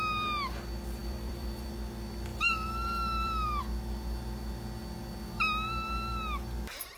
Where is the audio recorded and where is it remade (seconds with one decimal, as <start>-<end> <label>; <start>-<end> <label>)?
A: 0.0-1.0 recorded; 1.0-1.7 remade; 1.7-2.3 recorded; 2.3-3.6 remade; 3.6-7.0 recorded